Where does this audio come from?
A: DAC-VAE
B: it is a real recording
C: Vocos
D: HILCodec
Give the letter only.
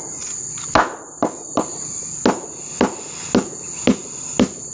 B